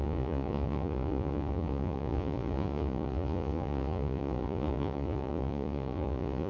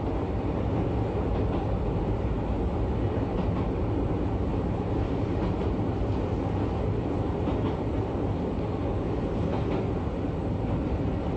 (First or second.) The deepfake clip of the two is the first